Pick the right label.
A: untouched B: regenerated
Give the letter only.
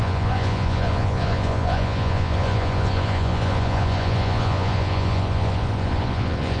B